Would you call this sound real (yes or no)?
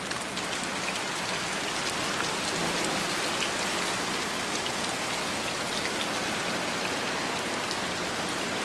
yes